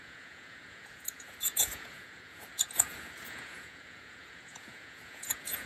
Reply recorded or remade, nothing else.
remade